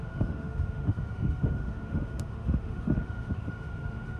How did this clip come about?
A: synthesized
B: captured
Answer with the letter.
A